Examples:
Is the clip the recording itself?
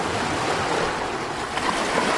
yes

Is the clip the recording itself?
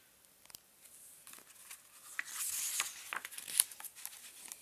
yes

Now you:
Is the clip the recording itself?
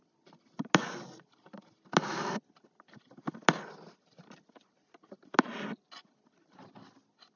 yes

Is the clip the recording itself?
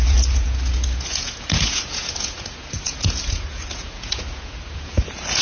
no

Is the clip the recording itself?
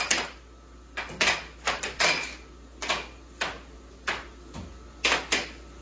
yes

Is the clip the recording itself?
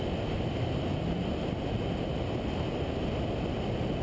yes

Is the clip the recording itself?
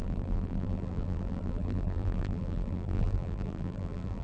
no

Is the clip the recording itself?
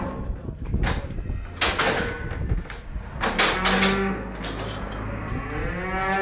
yes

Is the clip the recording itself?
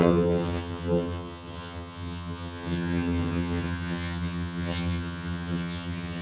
no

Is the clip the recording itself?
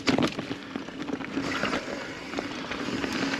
yes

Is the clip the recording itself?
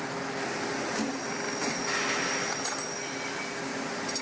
yes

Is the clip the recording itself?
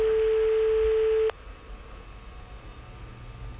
yes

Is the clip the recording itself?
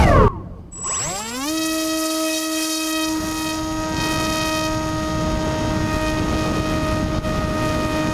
yes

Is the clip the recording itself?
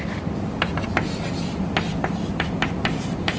no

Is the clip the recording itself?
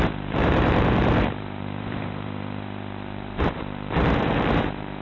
no